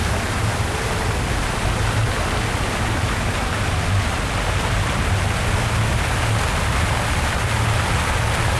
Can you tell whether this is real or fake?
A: real